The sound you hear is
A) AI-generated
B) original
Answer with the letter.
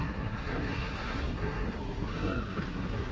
A